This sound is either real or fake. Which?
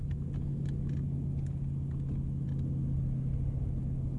real